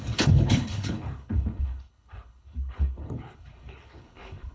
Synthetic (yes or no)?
yes